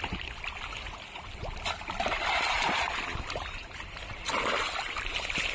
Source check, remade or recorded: recorded